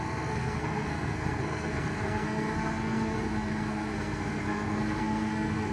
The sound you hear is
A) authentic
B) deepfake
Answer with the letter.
B